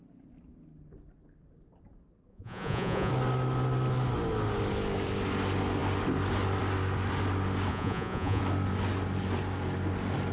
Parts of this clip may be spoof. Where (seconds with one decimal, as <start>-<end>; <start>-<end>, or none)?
2.3-3.1; 7.7-8.4